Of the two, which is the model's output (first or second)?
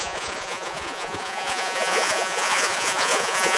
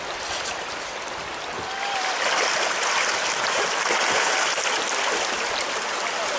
first